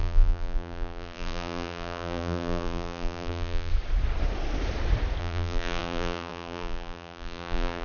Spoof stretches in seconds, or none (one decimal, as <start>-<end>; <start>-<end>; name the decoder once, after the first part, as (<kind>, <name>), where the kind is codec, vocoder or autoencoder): 0.0-3.7 (vocoder, BigVGAN v2); 5.2-7.8